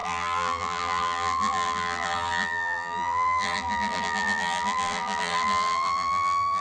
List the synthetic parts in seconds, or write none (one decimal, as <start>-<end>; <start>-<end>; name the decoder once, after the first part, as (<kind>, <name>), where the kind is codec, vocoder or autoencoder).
0.0-6.6 (vocoder, BigVGAN v2)